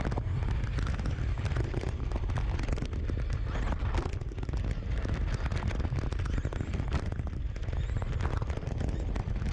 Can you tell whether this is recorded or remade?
recorded